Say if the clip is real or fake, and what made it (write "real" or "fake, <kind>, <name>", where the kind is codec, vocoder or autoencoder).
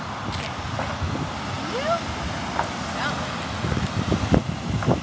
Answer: real